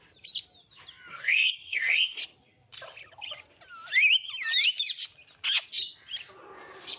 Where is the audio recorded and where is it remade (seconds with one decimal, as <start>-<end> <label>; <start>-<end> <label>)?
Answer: 0.0-1.1 recorded; 1.1-2.2 remade; 2.2-7.0 recorded